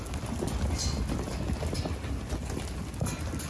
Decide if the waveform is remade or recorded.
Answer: recorded